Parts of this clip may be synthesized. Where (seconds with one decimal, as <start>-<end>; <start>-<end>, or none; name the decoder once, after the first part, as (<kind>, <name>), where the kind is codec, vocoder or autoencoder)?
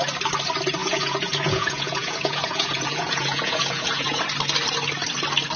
0.8-4.2 (vocoder, Vocos)